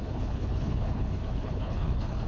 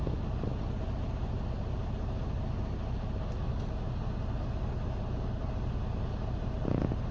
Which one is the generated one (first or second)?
first